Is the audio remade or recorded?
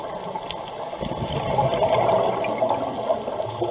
recorded